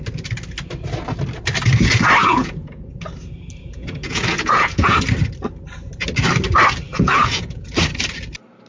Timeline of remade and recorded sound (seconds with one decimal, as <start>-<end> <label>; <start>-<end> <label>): 0.0-2.2 recorded; 2.2-2.8 remade; 2.8-3.7 recorded; 3.7-5.0 remade; 5.0-6.9 recorded; 6.9-7.7 remade; 7.7-8.7 recorded